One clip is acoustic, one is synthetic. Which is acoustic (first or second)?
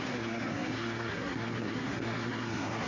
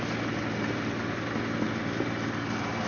second